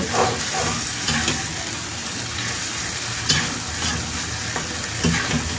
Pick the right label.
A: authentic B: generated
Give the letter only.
A